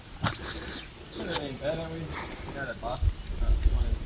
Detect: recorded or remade recorded